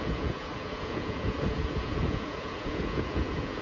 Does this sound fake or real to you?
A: fake